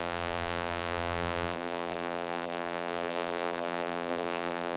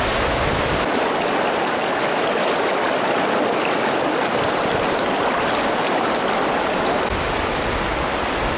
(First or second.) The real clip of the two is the second